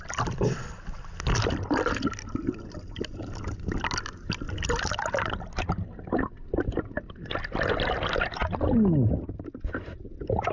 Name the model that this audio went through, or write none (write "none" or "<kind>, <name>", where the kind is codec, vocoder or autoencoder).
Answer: none